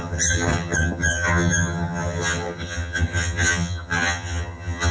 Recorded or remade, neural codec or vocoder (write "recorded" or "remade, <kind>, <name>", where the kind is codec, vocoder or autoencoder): remade, vocoder, HiFi-GAN